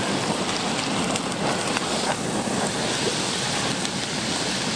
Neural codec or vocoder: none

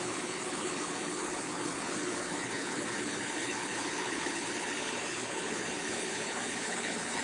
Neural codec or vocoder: codec, HILCodec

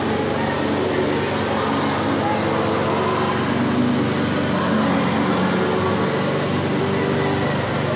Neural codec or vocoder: none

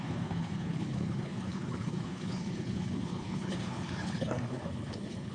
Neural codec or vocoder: codec, HILCodec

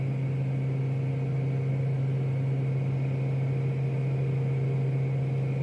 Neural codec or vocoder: none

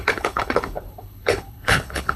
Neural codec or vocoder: codec, HILCodec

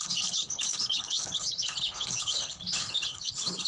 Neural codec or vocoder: codec, HILCodec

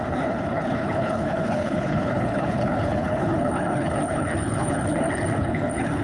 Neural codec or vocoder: codec, HILCodec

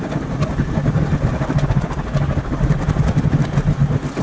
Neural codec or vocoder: none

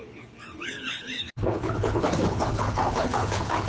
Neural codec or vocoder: codec, HILCodec